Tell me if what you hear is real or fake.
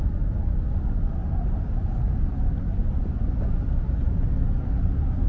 real